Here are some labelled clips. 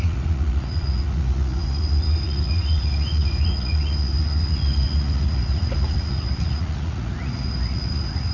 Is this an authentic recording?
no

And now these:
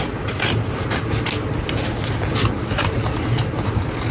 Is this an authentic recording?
yes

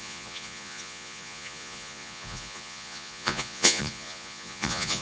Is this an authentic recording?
no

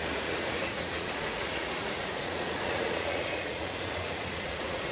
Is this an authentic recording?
no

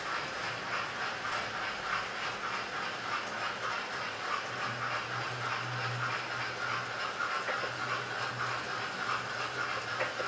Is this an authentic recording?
yes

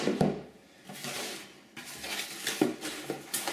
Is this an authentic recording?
yes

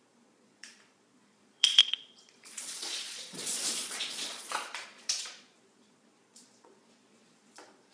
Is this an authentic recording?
no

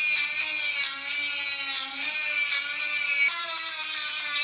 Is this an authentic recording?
yes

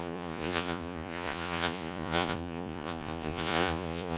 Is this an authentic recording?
no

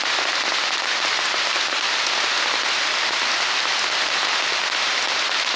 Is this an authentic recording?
yes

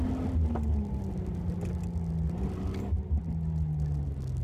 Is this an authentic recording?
yes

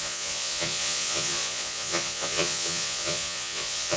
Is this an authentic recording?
no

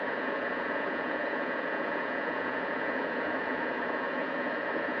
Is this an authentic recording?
no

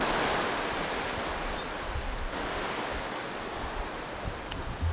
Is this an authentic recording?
yes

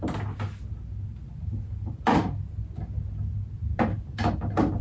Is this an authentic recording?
yes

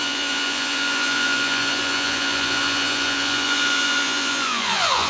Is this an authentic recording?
no